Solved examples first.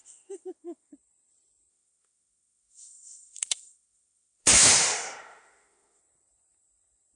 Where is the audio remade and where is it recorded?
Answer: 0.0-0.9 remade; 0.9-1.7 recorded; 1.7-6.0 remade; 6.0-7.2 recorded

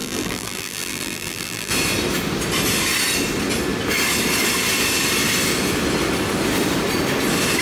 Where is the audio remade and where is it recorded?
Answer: 0.0-1.7 remade; 1.7-7.6 recorded

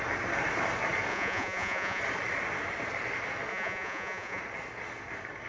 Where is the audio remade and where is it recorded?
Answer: 0.0-1.1 recorded; 1.1-2.0 remade; 2.0-3.5 recorded; 3.5-4.4 remade; 4.4-5.5 recorded

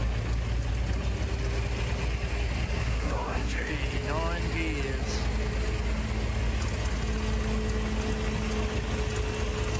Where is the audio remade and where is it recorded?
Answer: 0.0-2.8 recorded; 2.8-3.7 remade; 3.7-9.8 recorded

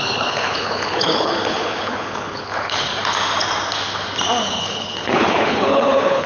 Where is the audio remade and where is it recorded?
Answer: 0.0-2.9 remade; 2.9-4.4 recorded; 4.4-6.3 remade